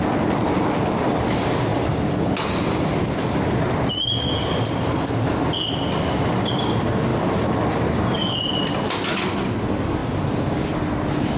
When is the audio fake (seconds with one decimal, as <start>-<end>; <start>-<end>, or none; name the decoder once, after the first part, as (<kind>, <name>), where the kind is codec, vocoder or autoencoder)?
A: none